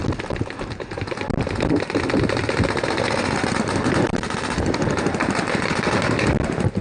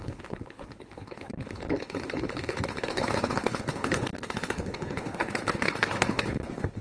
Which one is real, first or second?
first